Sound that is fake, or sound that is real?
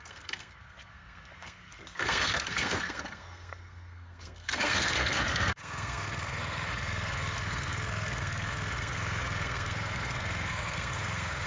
fake